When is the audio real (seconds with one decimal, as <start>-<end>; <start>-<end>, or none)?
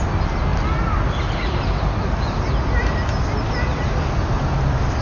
0.0-5.0